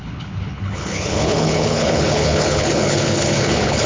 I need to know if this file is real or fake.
fake